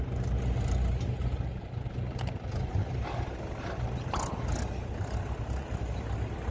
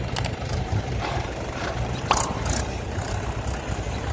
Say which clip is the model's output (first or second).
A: second